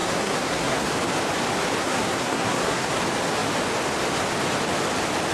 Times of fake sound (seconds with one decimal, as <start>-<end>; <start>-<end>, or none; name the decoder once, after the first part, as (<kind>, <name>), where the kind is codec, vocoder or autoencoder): 0.0-0.9 (codec, SNAC); 1.8-3.0